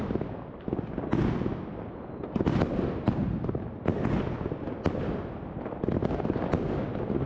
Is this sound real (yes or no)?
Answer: yes